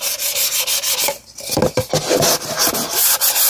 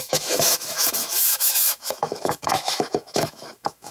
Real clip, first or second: first